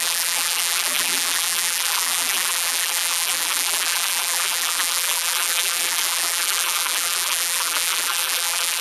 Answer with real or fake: fake